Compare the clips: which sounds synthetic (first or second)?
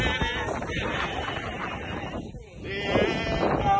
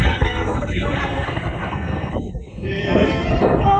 second